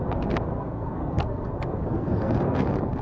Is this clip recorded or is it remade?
remade